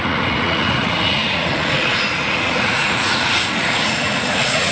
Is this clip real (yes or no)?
no